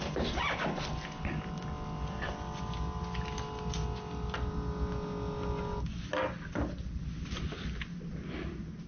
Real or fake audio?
real